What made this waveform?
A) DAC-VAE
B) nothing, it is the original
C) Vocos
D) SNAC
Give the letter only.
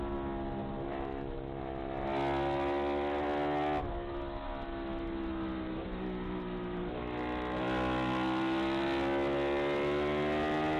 B